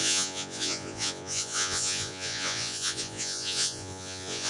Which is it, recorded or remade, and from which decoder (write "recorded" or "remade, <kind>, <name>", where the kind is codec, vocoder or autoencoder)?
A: remade, vocoder, Vocos